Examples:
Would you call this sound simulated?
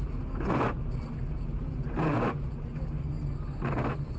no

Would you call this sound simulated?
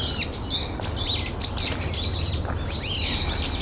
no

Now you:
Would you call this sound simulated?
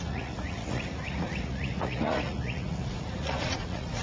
yes